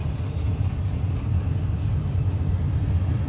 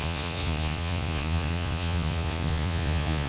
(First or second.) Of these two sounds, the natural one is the first